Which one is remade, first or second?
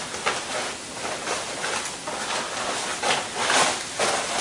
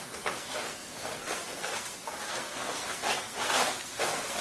second